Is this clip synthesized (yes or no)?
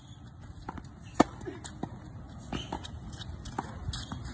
no